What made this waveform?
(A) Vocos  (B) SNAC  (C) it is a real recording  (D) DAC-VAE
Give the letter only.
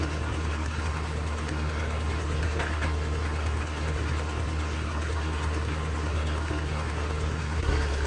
B